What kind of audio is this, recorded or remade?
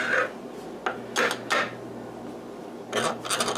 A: recorded